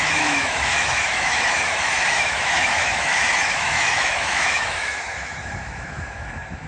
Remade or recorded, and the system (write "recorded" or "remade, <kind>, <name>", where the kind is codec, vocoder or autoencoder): remade, autoencoder, DAC-VAE